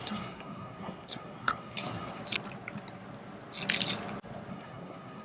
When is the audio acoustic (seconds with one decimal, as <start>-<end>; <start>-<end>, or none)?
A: 2.2-4.5